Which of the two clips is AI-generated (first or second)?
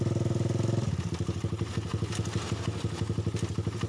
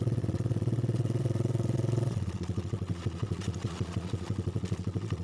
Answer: second